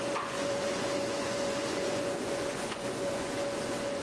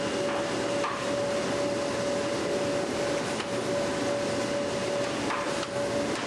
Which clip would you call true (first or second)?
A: second